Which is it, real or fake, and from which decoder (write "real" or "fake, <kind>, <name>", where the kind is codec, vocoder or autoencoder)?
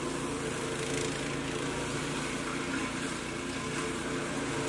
real